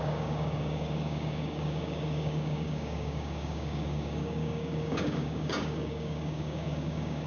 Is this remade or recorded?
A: remade